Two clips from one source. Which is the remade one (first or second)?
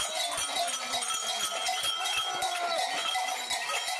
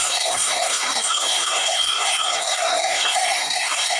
second